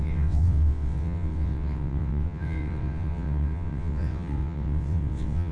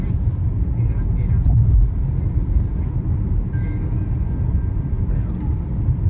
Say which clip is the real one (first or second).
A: second